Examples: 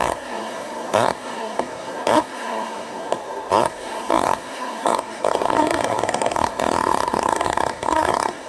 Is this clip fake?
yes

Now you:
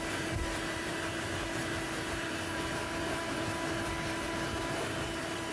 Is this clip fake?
yes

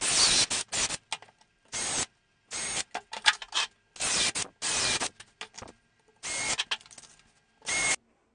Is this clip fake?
no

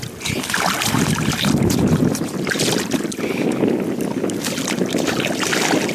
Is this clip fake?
no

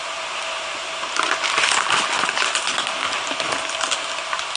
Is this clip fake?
no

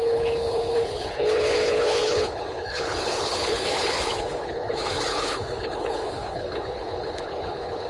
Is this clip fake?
yes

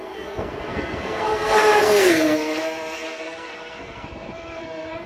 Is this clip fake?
yes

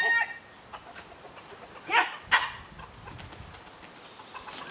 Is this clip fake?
no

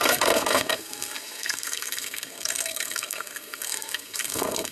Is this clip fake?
yes